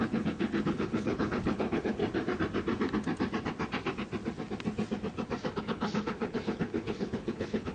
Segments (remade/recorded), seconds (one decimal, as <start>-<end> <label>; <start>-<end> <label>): 0.0-2.0 remade; 2.0-5.6 recorded; 5.6-7.7 remade